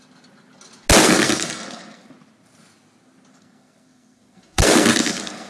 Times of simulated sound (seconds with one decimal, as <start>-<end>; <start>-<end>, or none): 1.0-2.1; 3.3-5.5